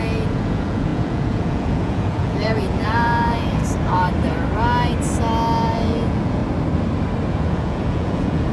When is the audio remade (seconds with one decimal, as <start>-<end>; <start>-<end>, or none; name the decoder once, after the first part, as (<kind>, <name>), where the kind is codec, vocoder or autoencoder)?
0.0-3.6 (vocoder, Vocos); 5.7-6.4; 7.3-8.5

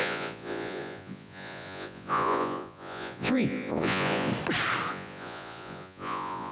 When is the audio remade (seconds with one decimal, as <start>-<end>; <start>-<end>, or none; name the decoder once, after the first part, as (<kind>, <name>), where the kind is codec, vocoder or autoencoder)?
0.0-4.3 (vocoder, Vocos); 4.9-6.5

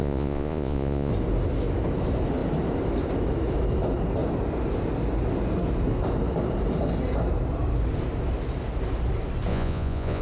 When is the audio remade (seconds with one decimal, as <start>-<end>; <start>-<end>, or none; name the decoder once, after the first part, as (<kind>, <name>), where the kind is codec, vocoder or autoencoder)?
0.0-1.1 (vocoder, Vocos); 9.5-10.2

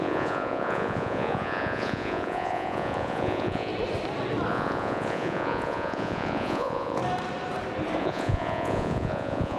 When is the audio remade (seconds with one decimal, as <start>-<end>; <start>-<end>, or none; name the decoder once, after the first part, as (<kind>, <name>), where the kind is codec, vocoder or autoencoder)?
0.0-3.7 (vocoder, Vocos); 4.5-7.0; 8.0-9.6

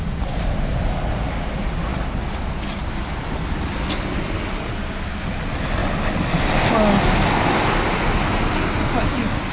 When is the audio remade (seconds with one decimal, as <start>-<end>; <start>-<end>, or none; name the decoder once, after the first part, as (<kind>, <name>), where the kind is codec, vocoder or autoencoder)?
none